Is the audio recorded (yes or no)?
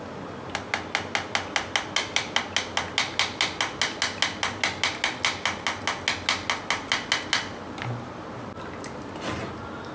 yes